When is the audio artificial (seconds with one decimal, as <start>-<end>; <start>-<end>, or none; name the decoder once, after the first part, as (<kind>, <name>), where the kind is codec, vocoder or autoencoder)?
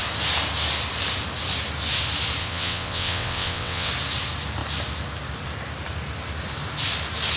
2.4-3.9 (vocoder, WaveNeXt)